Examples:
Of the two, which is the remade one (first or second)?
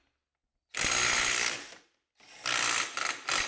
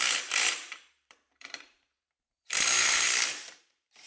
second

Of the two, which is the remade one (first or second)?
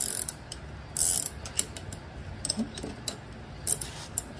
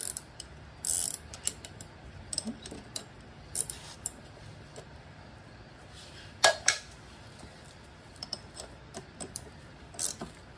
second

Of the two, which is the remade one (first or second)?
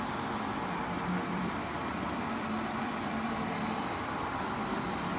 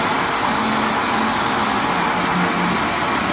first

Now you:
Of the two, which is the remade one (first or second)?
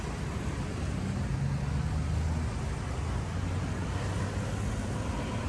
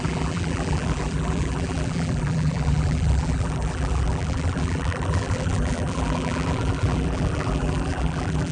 second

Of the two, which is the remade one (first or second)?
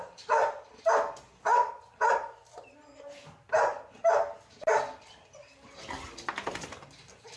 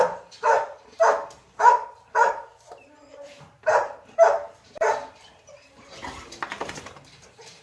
second